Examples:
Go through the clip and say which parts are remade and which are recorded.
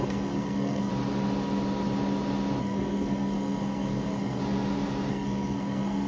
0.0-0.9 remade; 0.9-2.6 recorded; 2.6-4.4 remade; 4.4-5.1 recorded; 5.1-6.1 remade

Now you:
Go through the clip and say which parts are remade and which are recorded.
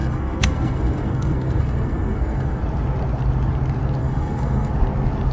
0.0-2.6 remade; 2.6-4.0 recorded; 4.0-4.7 remade; 4.7-5.3 recorded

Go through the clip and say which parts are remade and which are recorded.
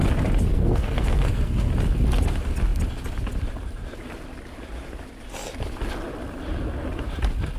0.0-0.5 recorded; 0.5-1.7 remade; 1.7-7.6 recorded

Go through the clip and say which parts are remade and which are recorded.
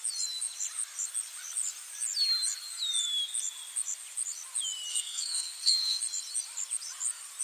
0.0-4.9 recorded; 4.9-6.0 remade; 6.0-7.4 recorded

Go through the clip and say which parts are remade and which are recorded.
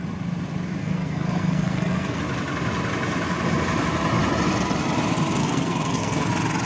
0.0-0.8 recorded; 0.8-2.2 remade; 2.2-5.4 recorded; 5.4-6.3 remade; 6.3-6.7 recorded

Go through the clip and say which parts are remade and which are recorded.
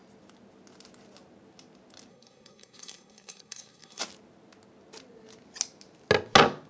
0.0-2.1 recorded; 2.1-4.0 remade; 4.0-6.7 recorded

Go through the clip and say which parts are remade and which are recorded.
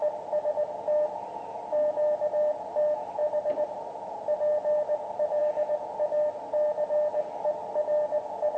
0.0-8.6 recorded